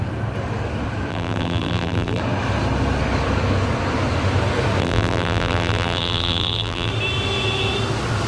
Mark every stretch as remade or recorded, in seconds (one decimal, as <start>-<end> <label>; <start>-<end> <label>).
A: 0.0-1.1 recorded; 1.1-2.2 remade; 2.2-4.8 recorded; 4.8-6.9 remade; 6.9-8.3 recorded